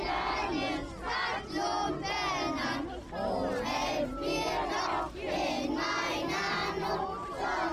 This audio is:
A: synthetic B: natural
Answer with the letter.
B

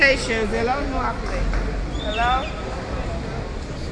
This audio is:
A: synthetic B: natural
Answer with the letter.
B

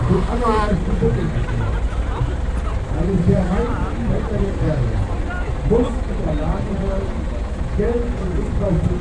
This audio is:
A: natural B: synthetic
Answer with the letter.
A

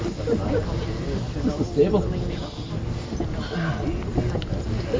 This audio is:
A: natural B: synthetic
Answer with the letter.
A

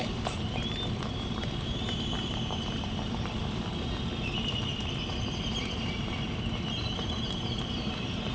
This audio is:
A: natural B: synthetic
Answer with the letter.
B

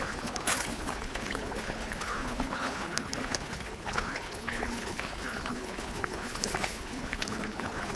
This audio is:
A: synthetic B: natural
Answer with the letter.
A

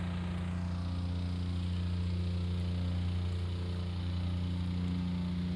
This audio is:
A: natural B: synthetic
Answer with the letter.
A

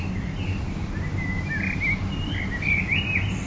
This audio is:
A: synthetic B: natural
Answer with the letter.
B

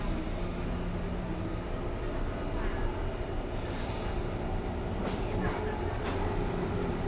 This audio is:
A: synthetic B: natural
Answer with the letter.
B